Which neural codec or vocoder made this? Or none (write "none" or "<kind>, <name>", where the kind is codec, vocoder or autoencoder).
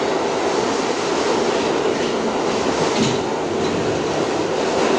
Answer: none